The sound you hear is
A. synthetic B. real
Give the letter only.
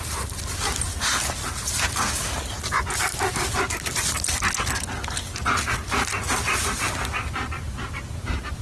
B